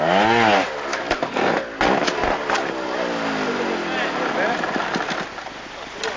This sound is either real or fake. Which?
real